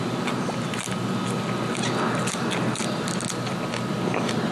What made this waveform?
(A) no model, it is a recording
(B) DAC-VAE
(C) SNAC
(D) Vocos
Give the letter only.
A